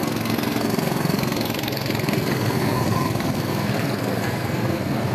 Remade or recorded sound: remade